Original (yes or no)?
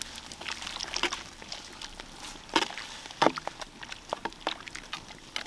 yes